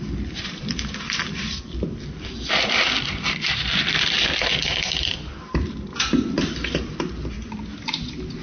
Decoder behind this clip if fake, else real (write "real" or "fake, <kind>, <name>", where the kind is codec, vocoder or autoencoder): fake, vocoder, BigVGAN v2